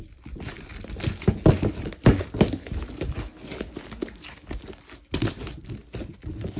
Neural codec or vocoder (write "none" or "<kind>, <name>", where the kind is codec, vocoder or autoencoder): none